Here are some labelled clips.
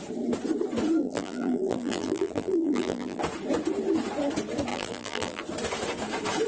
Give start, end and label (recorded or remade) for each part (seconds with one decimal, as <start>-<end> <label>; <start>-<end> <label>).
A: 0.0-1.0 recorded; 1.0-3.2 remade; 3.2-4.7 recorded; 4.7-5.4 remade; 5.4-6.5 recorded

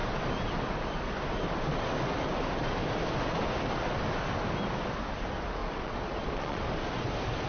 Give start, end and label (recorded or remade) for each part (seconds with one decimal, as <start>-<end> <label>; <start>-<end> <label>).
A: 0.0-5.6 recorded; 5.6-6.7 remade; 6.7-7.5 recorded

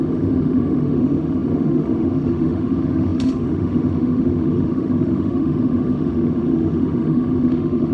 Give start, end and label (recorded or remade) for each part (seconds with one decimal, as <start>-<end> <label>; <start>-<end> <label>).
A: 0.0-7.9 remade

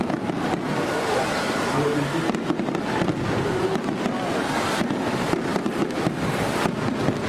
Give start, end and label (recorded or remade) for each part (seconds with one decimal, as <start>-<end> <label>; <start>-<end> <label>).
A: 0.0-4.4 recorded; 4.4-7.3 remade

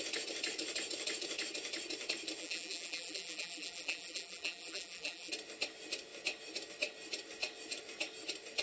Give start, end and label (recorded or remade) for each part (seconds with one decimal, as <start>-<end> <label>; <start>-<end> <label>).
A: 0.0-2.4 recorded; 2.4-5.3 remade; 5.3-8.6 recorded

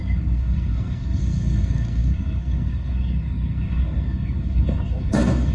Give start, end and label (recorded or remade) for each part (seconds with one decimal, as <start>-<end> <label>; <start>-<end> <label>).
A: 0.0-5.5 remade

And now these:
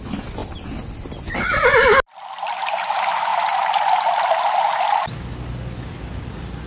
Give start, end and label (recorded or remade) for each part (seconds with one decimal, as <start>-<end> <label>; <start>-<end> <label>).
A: 0.0-6.7 recorded

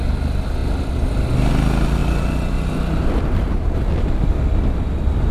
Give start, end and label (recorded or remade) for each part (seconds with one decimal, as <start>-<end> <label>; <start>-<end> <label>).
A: 0.0-5.3 recorded